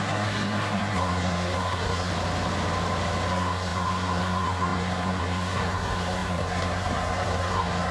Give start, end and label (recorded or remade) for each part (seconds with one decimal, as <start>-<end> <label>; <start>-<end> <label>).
0.0-2.1 remade; 2.1-3.3 recorded; 3.3-7.9 remade